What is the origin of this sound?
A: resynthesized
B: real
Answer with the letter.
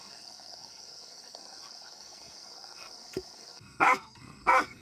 A